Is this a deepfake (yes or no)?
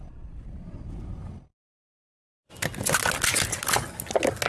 no